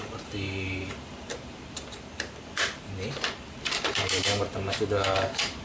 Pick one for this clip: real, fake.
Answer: fake